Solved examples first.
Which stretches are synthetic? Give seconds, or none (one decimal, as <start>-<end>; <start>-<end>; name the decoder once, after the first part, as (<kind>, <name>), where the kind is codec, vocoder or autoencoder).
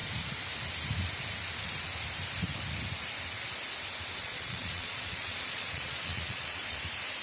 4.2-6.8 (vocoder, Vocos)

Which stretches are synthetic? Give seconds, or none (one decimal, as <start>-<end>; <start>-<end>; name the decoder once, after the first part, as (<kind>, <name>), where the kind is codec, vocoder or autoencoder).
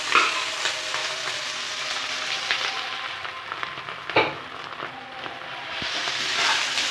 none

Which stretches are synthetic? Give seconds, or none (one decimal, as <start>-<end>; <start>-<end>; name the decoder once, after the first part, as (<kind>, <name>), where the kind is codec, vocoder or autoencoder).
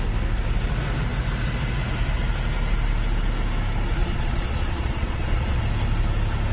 4.0-5.6 (vocoder, Vocos)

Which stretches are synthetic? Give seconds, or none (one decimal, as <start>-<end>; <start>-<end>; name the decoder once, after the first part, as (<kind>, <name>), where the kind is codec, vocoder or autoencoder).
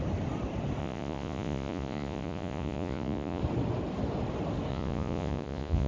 0.8-3.4 (vocoder, Vocos); 4.7-5.9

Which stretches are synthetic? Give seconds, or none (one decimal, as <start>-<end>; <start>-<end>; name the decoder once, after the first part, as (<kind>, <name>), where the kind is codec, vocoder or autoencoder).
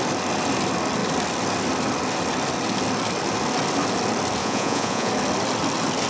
4.4-5.1 (vocoder, Vocos)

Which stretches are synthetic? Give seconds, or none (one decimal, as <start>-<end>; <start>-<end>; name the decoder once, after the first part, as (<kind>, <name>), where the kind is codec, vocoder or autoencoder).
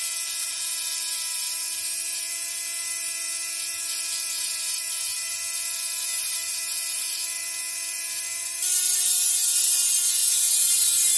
10.2-10.7 (vocoder, Vocos)